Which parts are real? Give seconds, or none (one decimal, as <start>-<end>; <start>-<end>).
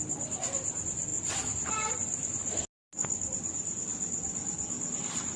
0.0-5.4